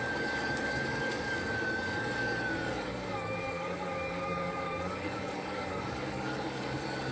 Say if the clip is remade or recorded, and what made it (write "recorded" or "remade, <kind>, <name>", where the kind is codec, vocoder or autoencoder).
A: remade, codec, DAC